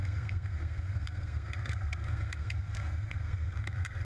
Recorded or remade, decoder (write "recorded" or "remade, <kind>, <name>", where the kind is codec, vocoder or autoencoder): remade, codec, SNAC